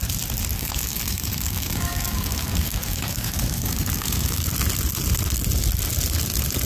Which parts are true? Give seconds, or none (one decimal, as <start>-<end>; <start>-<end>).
0.0-0.5; 4.5-6.6